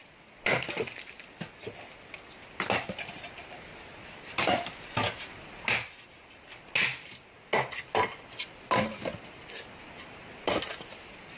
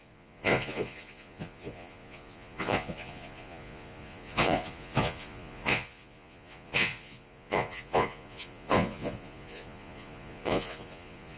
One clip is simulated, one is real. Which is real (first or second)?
first